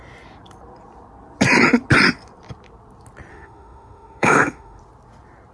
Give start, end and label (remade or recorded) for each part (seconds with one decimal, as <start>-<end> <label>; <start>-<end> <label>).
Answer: 0.0-3.3 recorded; 3.3-4.8 remade; 4.8-5.5 recorded